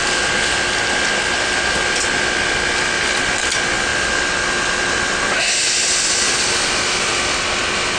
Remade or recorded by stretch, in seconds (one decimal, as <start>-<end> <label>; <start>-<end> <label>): 0.0-8.0 recorded